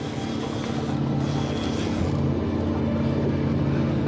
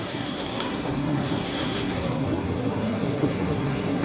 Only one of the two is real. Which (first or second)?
first